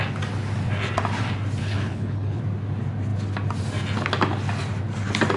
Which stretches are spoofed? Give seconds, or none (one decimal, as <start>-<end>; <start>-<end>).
1.6-2.4